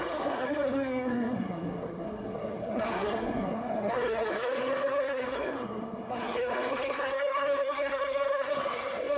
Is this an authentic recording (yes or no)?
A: no